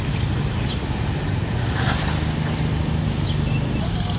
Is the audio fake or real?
real